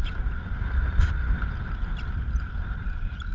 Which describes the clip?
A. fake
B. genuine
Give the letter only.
B